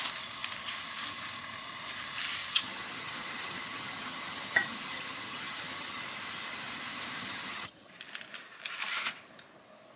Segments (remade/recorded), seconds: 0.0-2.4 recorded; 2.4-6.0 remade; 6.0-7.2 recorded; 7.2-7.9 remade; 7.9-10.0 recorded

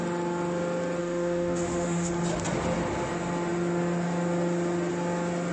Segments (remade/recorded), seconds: 0.0-1.0 recorded; 1.0-2.1 remade; 2.1-5.5 recorded

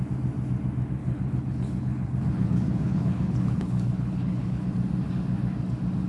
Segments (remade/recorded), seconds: 0.0-1.0 recorded; 1.0-4.7 remade; 4.7-6.1 recorded

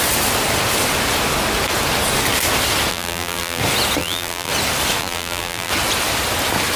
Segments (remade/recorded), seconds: 0.0-2.9 recorded; 2.9-3.6 remade; 3.6-4.0 recorded; 4.0-4.5 remade; 4.5-5.0 recorded; 5.0-5.7 remade; 5.7-6.8 recorded

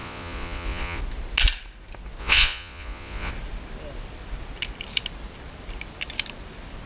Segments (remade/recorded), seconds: 0.0-1.0 remade; 1.0-2.2 recorded; 2.2-3.3 remade; 3.3-6.9 recorded

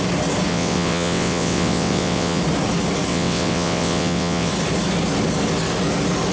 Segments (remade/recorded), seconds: 0.0-0.5 recorded; 0.5-2.4 remade; 2.4-3.1 recorded; 3.1-4.5 remade; 4.5-6.3 recorded